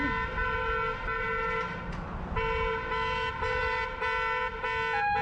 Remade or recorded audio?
recorded